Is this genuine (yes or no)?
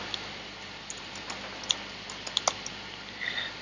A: yes